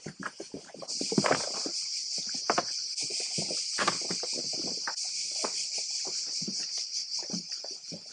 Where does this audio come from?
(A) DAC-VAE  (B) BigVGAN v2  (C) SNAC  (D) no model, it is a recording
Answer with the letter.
D